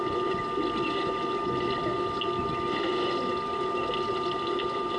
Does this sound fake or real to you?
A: real